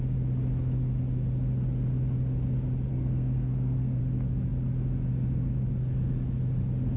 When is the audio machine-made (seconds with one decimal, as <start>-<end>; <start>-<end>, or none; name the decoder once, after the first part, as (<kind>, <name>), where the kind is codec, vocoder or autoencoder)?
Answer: 2.9-4.0 (codec, SNAC)